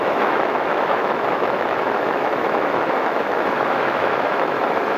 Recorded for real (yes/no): no